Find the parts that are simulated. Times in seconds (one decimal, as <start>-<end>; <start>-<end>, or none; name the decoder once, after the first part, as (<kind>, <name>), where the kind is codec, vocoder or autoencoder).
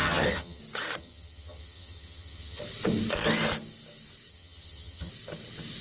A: 0.0-0.6 (vocoder, HiFi-GAN); 1.0-2.6; 4.3-5.1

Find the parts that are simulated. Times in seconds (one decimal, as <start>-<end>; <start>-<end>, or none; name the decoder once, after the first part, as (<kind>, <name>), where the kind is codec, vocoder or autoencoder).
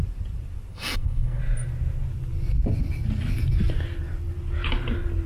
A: 0.7-1.4 (codec, SNAC)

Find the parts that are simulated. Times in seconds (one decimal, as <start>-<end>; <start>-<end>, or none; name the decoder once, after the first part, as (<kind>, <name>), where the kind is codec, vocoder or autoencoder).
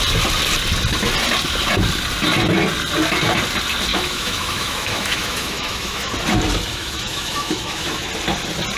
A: 3.9-6.1 (autoencoder, DAC-VAE); 6.7-8.1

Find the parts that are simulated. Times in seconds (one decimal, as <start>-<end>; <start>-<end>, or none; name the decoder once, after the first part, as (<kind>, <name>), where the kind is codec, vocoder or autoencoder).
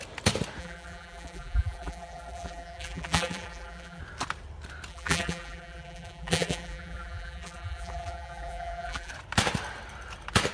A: 0.6-4.0 (vocoder, BigVGAN v2); 4.9-9.1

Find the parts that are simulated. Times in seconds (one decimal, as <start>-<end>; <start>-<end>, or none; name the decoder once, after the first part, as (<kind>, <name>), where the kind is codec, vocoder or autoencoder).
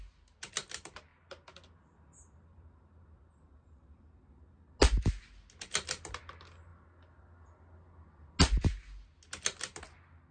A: none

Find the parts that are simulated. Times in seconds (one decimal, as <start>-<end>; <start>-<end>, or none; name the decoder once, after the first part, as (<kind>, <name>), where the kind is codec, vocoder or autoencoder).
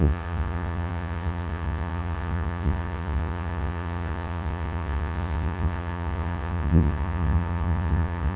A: 0.0-8.4 (vocoder, Vocos)